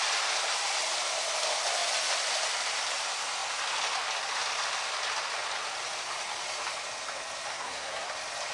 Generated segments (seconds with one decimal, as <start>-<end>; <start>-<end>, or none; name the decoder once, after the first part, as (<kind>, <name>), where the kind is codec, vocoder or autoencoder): 7.5-8.1 (codec, SNAC)